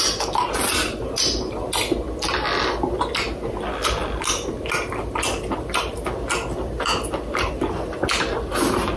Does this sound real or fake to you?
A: real